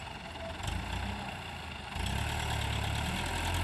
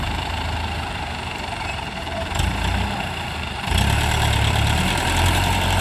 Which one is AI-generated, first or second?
second